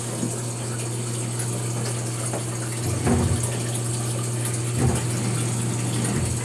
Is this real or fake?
real